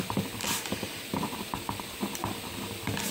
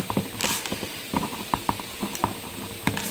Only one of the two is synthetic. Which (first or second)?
second